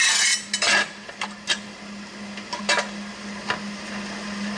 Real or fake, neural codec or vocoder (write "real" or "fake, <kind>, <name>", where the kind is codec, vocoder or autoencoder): real